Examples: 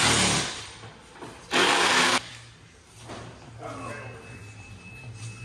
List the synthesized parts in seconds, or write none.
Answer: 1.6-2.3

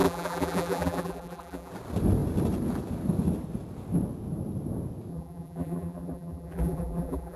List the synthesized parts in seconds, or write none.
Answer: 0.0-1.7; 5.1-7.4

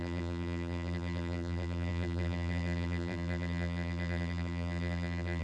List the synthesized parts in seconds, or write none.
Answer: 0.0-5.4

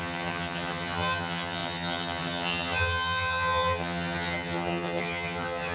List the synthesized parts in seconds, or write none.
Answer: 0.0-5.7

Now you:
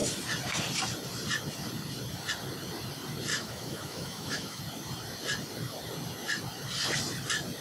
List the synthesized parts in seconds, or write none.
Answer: 3.3-4.6

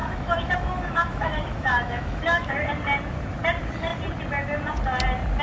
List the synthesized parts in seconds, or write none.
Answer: 0.0-2.5

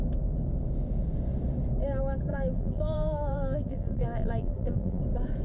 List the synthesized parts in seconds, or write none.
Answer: 2.3-5.0